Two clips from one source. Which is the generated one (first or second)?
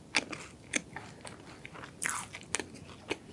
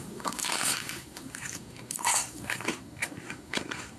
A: second